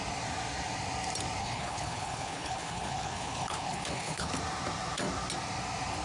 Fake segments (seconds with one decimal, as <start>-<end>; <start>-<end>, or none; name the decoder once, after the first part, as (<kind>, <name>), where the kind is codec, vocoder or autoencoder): 1.4-4.3 (codec, HILCodec)